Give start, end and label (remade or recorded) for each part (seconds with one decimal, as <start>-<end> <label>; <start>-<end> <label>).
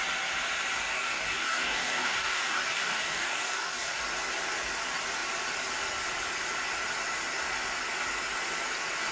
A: 0.0-0.9 recorded; 0.9-4.0 remade; 4.0-9.1 recorded